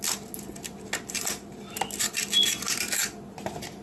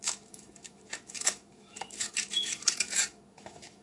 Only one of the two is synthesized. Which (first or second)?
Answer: second